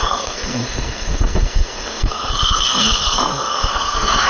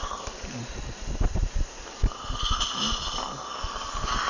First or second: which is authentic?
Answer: second